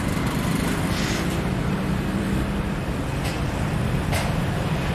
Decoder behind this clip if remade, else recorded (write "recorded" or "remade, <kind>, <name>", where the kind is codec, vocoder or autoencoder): remade, vocoder, BigVGAN v2